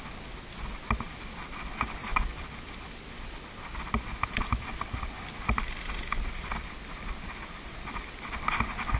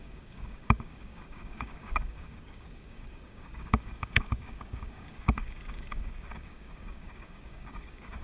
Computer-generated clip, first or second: second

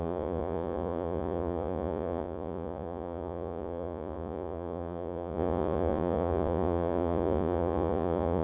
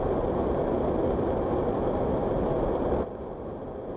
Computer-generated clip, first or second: first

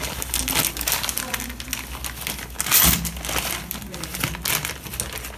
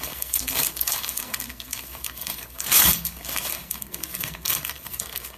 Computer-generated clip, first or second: second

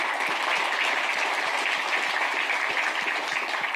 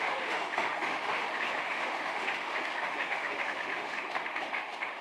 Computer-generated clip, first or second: second